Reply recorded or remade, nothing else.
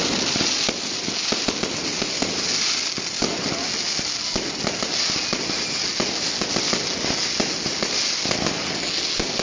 recorded